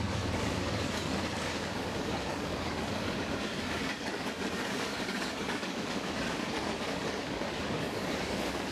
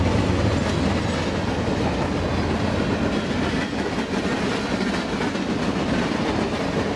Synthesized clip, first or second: first